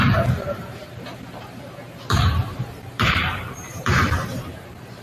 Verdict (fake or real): fake